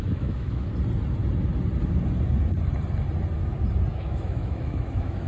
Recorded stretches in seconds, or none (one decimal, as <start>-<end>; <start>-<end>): 0.7-3.9